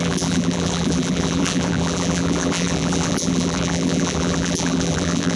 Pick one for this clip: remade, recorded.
remade